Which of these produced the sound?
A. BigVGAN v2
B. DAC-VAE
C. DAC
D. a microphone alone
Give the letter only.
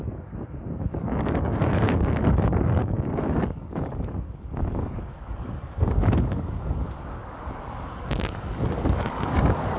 C